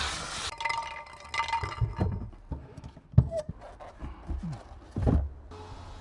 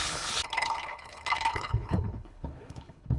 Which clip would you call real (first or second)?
first